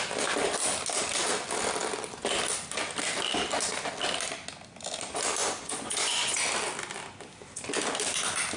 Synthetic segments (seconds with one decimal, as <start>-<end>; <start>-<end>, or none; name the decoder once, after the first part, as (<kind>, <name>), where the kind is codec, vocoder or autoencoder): 5.4-6.4 (vocoder, Vocos)